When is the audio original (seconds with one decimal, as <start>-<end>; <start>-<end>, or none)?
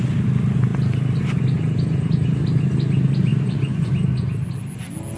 0.0-3.3; 3.9-5.2